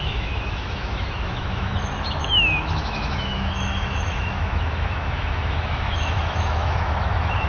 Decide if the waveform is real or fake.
fake